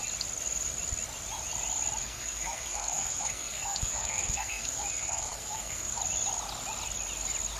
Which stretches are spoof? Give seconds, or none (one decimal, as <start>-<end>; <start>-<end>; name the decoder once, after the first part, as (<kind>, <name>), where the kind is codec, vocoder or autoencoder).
2.0-6.0 (codec, SNAC)